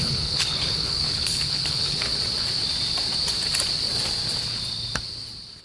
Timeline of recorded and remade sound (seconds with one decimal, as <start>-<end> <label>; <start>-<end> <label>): 0.0-2.1 remade; 2.1-5.6 recorded

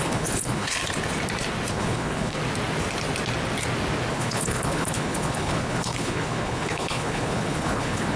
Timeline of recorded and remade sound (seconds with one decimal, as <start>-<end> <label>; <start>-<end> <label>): 0.0-0.8 remade; 0.8-1.7 recorded; 1.7-2.4 remade; 2.4-4.1 recorded; 4.1-8.2 remade

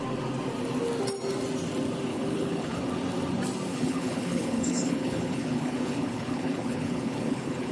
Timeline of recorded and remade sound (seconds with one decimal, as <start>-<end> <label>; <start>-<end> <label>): 0.0-2.1 recorded; 2.1-2.8 remade; 2.8-3.7 recorded; 3.7-7.7 remade

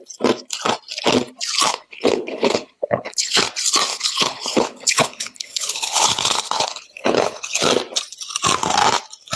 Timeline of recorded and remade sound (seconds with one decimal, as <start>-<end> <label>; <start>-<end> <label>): 0.0-1.7 recorded; 1.7-3.4 remade; 3.4-3.9 recorded; 3.9-7.7 remade; 7.7-9.4 recorded

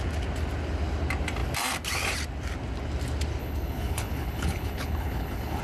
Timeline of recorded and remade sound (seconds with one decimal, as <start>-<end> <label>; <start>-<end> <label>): 0.0-3.4 recorded; 3.4-5.6 remade